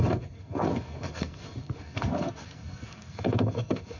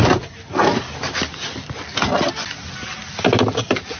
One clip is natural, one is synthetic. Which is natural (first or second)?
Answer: second